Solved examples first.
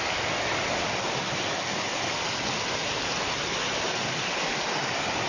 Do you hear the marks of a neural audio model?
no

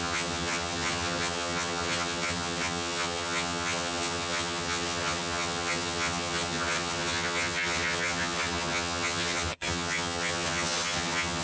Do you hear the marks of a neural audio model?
yes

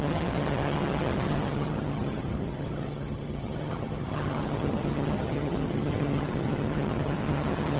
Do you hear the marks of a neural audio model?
yes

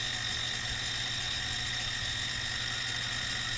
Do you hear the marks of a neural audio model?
no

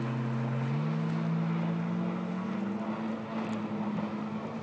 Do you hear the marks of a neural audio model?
no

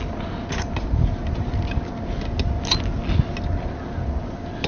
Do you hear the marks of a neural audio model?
no